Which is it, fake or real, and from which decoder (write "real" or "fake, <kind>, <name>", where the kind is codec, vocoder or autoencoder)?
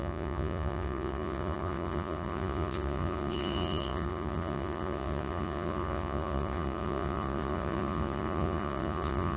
fake, vocoder, Vocos